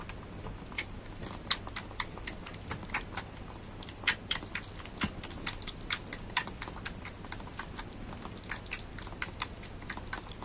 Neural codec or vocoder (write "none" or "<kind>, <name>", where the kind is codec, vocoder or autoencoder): none